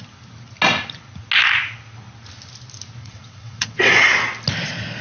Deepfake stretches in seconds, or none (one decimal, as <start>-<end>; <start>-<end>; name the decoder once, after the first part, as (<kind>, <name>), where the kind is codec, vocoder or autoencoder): 3.0-4.1 (vocoder, WaveNeXt)